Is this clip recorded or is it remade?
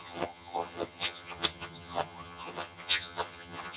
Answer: remade